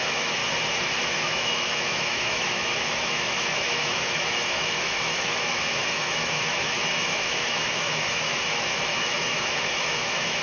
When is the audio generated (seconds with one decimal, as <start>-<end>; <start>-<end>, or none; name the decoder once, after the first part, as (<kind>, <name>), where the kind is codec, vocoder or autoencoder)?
0.0-0.4 (autoencoder, DAC-VAE); 1.0-10.4